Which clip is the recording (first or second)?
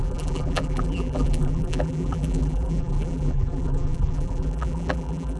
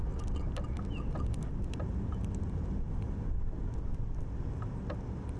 second